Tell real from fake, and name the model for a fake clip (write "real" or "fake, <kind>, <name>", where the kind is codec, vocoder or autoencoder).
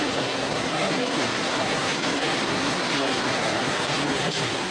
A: fake, codec, SNAC